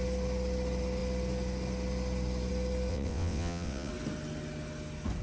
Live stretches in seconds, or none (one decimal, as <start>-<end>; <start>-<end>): 0.0-2.9; 3.9-5.2

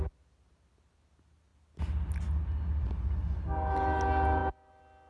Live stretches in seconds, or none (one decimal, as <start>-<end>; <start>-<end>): 0.0-5.1

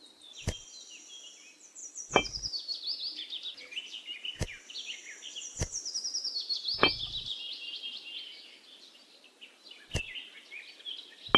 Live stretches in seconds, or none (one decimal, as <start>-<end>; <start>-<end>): 0.0-11.4

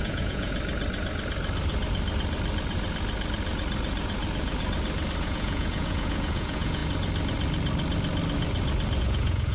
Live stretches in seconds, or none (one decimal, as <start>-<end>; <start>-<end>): 0.5-5.2; 6.8-9.0

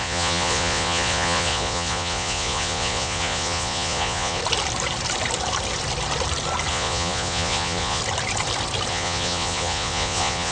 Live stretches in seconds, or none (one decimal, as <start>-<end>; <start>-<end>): 4.4-6.7; 8.0-8.9

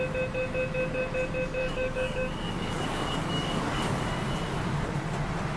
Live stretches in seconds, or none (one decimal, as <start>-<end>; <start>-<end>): 0.0-1.6; 4.0-5.6

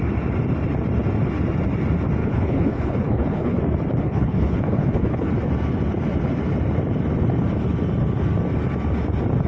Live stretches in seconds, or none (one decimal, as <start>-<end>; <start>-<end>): 0.0-2.2; 3.6-4.0; 5.3-9.5

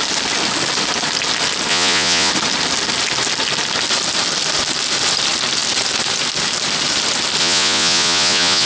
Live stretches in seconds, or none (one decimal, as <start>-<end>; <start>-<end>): 0.0-1.7; 2.3-7.4